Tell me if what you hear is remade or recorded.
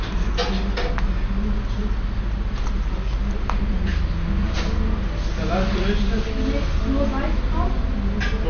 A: recorded